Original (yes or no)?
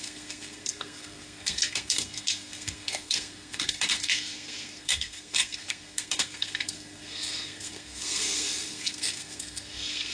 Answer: no